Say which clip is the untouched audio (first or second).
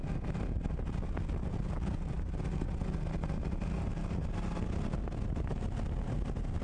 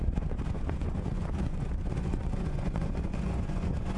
first